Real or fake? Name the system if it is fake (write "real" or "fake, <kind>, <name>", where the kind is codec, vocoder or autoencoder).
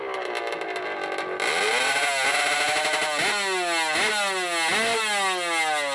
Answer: real